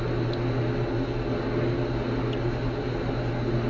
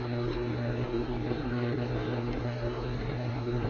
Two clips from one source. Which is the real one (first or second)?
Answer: first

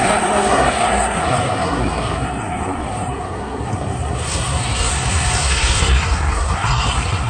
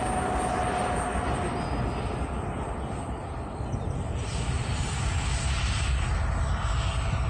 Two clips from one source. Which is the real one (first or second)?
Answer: second